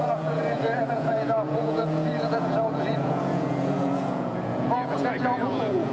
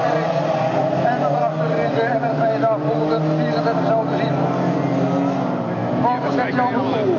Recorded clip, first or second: second